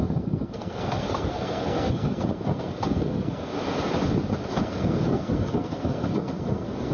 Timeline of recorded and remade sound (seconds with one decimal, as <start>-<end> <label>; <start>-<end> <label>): 0.0-3.5 remade; 3.5-4.6 recorded; 4.6-6.9 remade